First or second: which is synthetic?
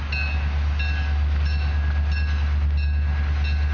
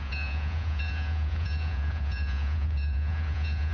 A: second